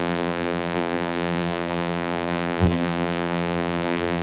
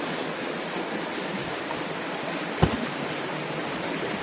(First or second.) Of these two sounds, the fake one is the first